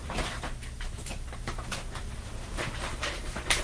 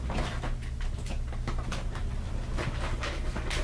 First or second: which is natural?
second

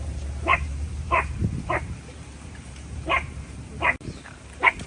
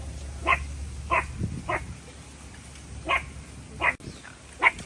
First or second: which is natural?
second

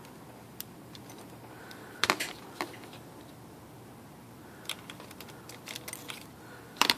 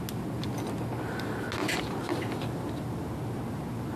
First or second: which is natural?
second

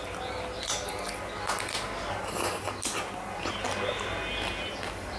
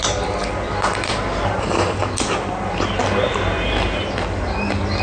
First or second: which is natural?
first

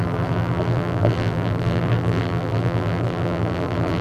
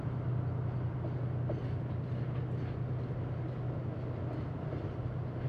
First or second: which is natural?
second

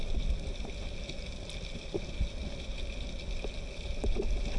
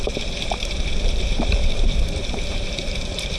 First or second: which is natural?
first